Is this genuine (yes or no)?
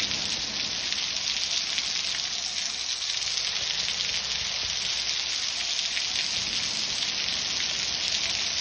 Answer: yes